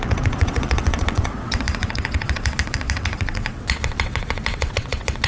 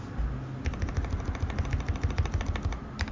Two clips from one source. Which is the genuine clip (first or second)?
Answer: second